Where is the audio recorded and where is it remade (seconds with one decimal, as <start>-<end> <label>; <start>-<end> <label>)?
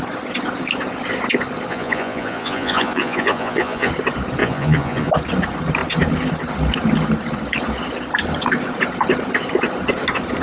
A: 0.0-1.7 recorded; 1.7-3.9 remade; 3.9-4.4 recorded; 4.4-5.1 remade; 5.1-10.4 recorded